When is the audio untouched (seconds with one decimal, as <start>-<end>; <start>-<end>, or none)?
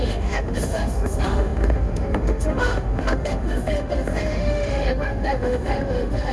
none